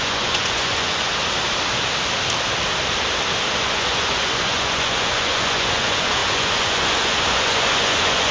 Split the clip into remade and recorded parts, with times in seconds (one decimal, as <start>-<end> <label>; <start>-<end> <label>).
0.0-1.1 remade; 1.1-3.6 recorded; 3.6-8.3 remade